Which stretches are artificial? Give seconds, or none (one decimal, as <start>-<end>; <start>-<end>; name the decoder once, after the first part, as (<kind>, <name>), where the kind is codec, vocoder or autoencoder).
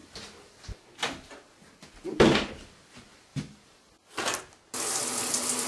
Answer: none